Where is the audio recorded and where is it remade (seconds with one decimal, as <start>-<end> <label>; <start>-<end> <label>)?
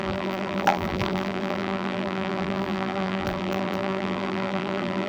0.0-5.1 remade